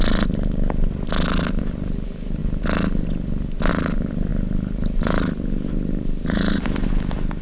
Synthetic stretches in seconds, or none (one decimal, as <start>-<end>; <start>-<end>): 4.3-6.9